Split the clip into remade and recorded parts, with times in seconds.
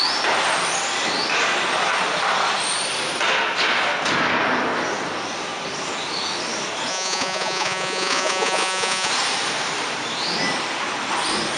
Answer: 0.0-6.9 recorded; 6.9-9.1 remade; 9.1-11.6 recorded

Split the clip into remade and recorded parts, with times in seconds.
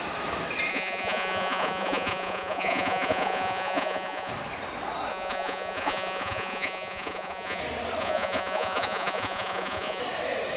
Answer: 0.0-0.7 recorded; 0.7-4.3 remade; 4.3-5.1 recorded; 5.1-7.6 remade; 7.6-8.0 recorded; 8.0-10.0 remade; 10.0-10.6 recorded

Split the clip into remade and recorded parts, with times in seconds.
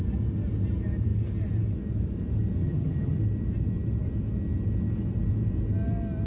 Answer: 0.0-2.6 recorded; 2.6-3.2 remade; 3.2-6.3 recorded